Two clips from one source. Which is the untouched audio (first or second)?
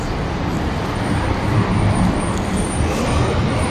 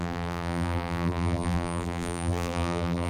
first